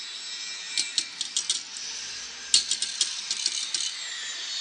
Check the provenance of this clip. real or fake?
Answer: real